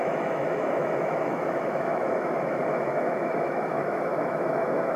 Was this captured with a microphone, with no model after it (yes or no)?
no